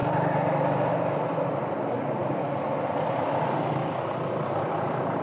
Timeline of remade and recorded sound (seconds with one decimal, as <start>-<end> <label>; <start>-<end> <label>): 0.0-5.2 recorded